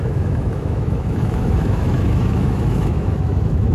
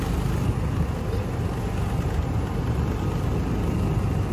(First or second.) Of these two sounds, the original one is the second